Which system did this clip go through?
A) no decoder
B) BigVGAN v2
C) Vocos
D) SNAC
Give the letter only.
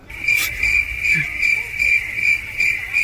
A